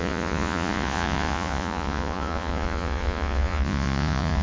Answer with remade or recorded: remade